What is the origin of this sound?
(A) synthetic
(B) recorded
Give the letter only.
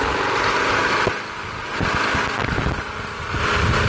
B